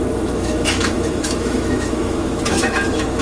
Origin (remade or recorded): remade